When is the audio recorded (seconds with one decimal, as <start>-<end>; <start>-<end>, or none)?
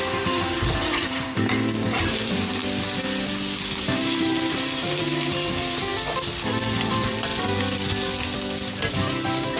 2.6-3.7; 5.9-6.6; 7.3-8.9